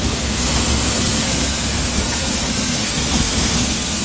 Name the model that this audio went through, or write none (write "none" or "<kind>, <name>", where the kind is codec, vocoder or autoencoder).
codec, SNAC